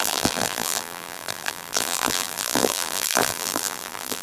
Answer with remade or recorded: remade